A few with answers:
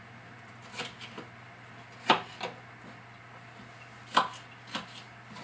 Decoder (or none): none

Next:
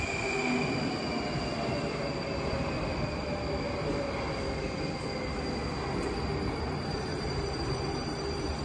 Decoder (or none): none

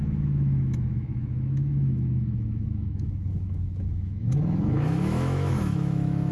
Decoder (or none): autoencoder, DAC-VAE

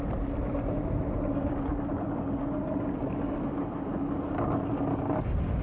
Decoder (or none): none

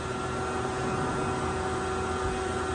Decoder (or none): none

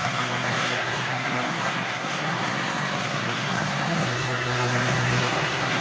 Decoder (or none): codec, SNAC